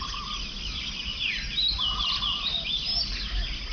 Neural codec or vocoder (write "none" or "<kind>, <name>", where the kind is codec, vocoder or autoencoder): none